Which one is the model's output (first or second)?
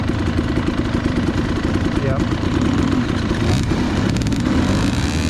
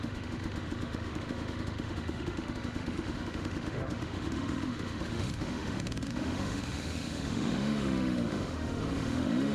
second